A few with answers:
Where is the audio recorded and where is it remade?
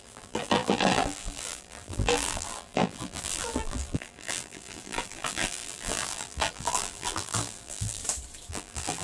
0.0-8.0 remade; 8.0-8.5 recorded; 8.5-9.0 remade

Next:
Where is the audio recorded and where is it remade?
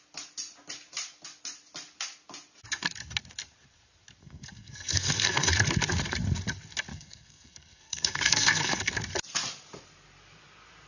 0.0-4.2 recorded; 4.2-5.5 remade; 5.5-6.9 recorded; 6.9-8.9 remade; 8.9-10.9 recorded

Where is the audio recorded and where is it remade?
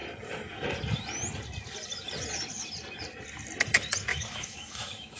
0.0-4.1 recorded; 4.1-5.2 remade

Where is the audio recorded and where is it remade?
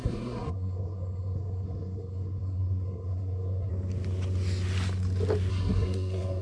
0.0-3.7 remade; 3.7-5.5 recorded; 5.5-6.4 remade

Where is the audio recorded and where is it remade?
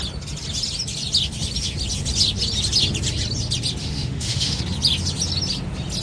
0.0-3.8 recorded; 3.8-4.6 remade; 4.6-6.0 recorded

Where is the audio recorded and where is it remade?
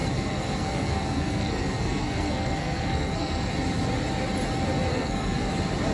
0.0-3.5 remade; 3.5-4.9 recorded; 4.9-5.5 remade; 5.5-5.9 recorded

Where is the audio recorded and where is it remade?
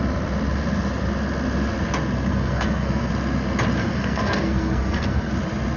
0.0-2.3 recorded; 2.3-3.1 remade; 3.1-3.8 recorded; 3.8-5.3 remade; 5.3-5.8 recorded